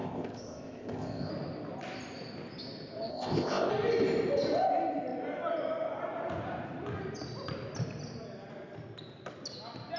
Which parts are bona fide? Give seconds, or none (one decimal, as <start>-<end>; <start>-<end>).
1.3-3.1; 3.7-10.0